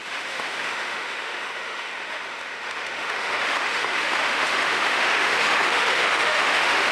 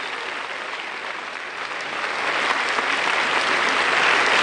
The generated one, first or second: first